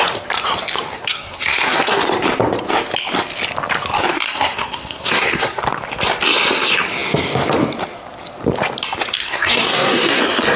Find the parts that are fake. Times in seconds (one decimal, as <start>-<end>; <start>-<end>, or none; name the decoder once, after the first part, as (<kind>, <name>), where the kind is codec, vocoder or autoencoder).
0.9-2.0 (codec, SNAC); 4.1-5.6; 9.2-10.2